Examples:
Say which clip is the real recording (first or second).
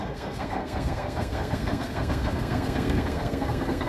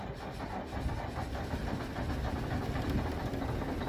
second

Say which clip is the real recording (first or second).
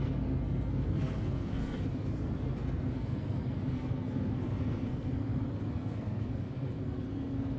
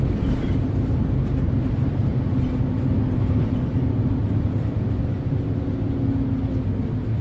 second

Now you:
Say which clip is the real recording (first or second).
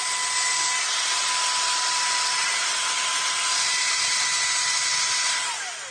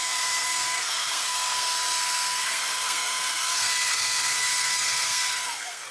first